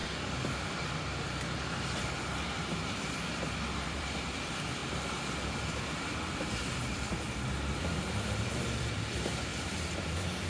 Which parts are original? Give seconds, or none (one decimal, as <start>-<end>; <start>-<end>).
0.0-3.5; 4.8-7.8